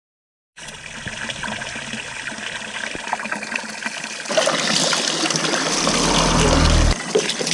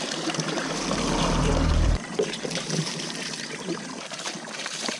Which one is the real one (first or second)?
first